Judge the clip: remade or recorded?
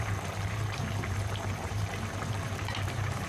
remade